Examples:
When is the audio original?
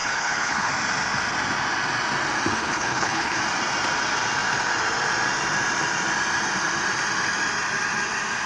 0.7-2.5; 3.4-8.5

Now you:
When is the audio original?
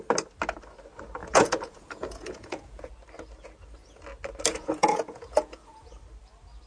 0.0-1.2; 2.9-4.5; 5.9-6.7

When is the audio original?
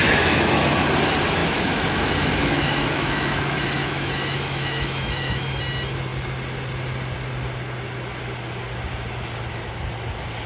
0.6-1.4; 5.6-10.5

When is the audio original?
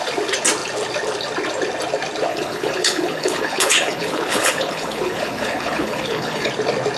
0.0-2.3; 6.5-7.0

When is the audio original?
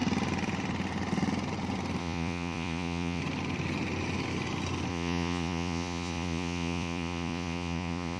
0.0-2.0; 3.2-4.9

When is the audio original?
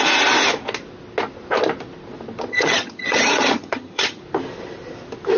0.0-2.5; 4.2-5.4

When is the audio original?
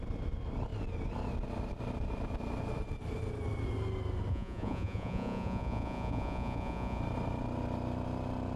0.0-4.3; 7.0-8.6